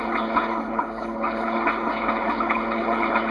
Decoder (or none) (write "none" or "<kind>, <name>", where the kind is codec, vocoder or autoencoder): codec, HILCodec